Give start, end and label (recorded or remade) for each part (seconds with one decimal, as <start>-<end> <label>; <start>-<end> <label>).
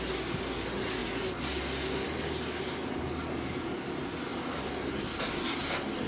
0.0-6.1 recorded